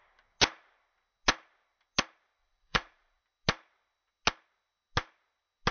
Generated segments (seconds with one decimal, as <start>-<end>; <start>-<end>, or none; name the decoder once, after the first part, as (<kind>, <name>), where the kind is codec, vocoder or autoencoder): 2.4-3.2 (vocoder, Vocos)